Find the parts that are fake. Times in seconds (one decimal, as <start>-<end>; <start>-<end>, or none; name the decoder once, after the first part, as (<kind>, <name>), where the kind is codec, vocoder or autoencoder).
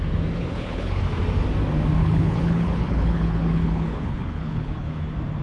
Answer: 0.4-1.0 (codec, HILCodec); 2.0-5.0